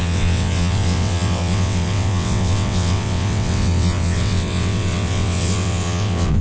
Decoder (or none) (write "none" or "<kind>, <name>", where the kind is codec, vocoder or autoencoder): vocoder, WaveNeXt